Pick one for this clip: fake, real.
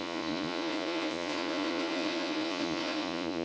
fake